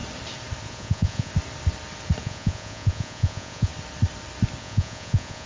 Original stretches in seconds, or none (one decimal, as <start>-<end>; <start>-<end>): 0.0-0.6; 1.3-2.2; 3.7-4.6